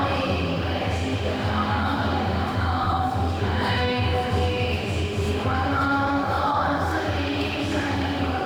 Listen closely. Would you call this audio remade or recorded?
remade